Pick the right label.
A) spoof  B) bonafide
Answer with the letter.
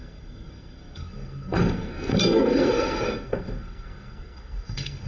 A